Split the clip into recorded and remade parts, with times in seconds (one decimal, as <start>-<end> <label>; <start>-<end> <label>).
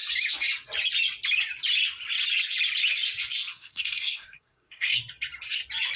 0.0-3.5 recorded; 3.5-5.0 remade; 5.0-6.0 recorded